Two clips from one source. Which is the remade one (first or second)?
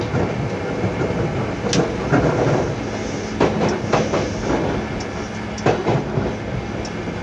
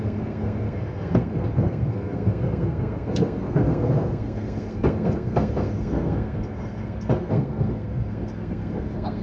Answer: second